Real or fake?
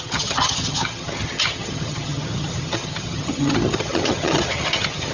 fake